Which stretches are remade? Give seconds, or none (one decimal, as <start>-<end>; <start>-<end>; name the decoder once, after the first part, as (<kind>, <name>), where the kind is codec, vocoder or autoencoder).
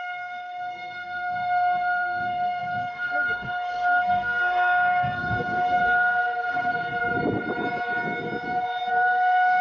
0.0-6.8 (codec, SNAC); 8.9-9.6